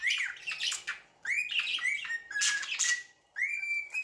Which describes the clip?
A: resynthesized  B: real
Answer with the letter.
B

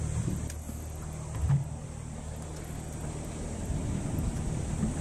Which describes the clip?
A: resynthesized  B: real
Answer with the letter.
B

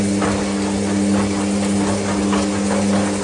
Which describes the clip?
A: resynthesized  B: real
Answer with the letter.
B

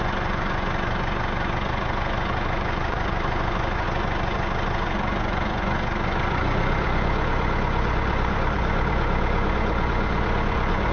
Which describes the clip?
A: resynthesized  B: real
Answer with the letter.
A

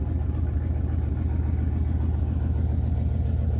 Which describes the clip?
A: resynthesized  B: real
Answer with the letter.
B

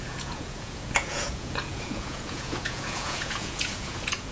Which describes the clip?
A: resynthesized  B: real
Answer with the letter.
A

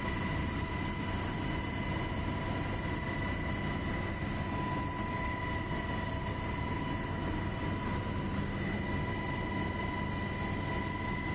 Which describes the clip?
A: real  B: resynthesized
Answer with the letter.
A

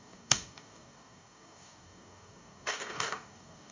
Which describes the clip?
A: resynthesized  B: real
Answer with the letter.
A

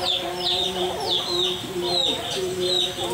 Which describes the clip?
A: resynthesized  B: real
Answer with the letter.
B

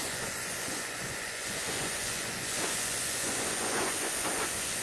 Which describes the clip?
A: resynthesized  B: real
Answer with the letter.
A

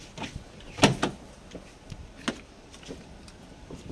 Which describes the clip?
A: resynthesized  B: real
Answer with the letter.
B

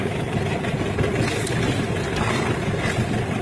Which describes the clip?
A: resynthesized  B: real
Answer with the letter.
B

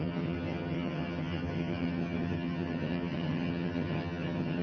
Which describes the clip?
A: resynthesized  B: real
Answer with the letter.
A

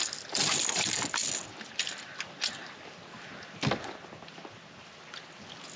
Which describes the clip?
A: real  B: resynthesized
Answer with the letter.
A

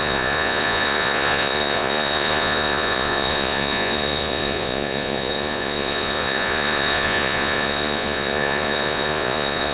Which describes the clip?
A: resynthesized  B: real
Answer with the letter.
A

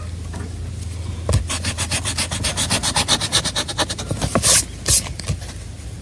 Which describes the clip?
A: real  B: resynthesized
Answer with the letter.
A